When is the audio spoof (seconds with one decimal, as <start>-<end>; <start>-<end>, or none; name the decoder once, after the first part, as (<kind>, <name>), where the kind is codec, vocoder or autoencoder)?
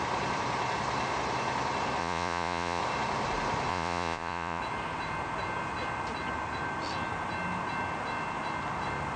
2.0-2.8 (vocoder, Vocos); 3.7-4.6